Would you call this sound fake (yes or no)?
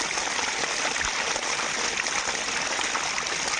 no